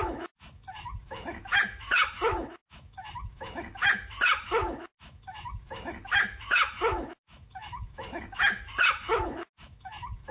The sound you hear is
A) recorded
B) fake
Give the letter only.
B